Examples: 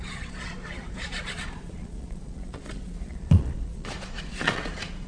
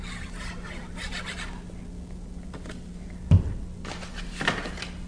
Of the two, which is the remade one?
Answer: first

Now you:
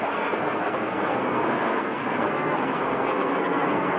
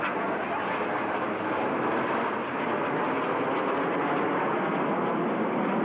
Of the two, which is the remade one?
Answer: first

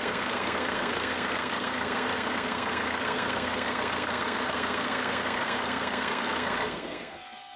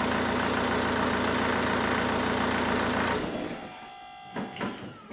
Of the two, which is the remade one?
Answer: first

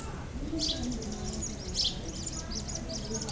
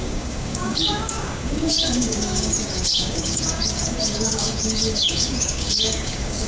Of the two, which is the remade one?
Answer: second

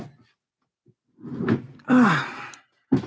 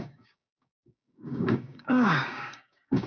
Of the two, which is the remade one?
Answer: second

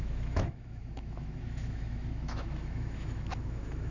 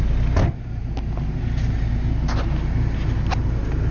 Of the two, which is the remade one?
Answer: first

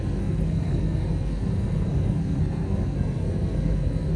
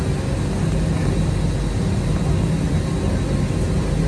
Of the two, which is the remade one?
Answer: first